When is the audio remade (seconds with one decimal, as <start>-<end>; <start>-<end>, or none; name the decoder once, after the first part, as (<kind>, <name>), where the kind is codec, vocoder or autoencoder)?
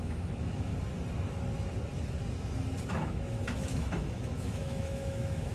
0.0-0.7 (autoencoder, DAC-VAE); 2.9-5.5